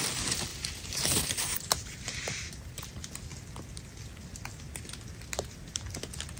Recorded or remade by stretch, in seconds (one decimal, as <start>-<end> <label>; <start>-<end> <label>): 0.0-0.5 recorded; 0.5-2.9 remade; 2.9-6.4 recorded